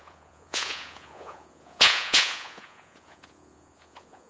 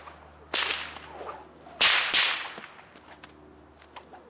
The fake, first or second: first